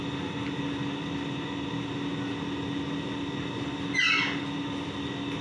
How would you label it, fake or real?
real